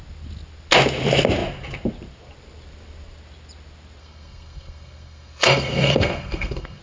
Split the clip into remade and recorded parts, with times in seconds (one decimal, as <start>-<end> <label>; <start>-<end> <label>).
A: 0.0-4.0 recorded; 4.0-6.8 remade